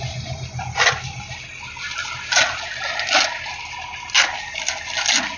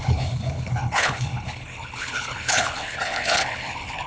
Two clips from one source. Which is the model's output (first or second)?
second